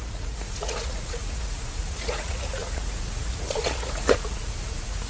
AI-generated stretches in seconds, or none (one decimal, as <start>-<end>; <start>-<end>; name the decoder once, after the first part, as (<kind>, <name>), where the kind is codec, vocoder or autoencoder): 0.0-5.1 (vocoder, Vocos)